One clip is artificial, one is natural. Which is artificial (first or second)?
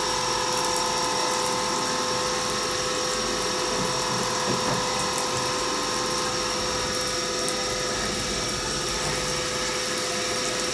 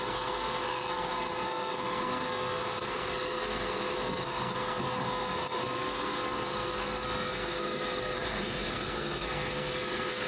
second